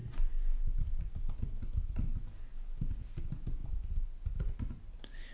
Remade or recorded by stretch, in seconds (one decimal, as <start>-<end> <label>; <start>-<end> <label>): 0.0-5.3 recorded